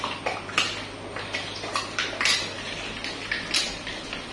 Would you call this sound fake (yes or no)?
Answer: no